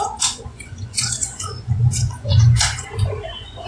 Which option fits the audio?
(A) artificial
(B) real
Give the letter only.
A